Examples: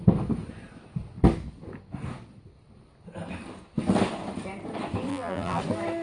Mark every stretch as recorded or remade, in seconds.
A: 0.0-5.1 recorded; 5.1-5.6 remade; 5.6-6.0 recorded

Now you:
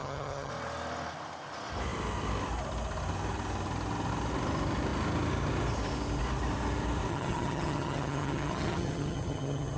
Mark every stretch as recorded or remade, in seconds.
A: 0.0-0.5 remade; 0.5-7.1 recorded; 7.1-9.8 remade

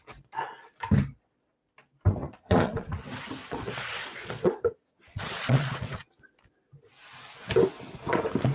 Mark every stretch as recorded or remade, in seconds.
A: 0.0-2.2 recorded; 2.2-2.9 remade; 2.9-3.4 recorded; 3.4-6.3 remade; 6.3-8.5 recorded